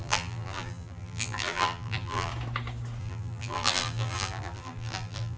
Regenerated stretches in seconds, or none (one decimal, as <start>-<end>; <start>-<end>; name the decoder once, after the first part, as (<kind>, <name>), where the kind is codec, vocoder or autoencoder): 0.0-2.3 (vocoder, BigVGAN v2); 3.0-5.4